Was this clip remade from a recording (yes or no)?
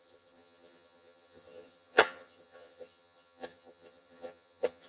yes